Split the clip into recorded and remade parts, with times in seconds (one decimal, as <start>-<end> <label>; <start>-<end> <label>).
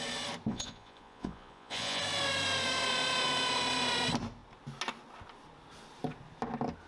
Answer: 0.0-0.5 recorded; 0.5-2.0 remade; 2.0-6.9 recorded